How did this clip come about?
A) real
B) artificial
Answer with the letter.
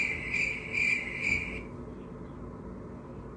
A